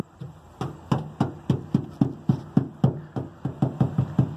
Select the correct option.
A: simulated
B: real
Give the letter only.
B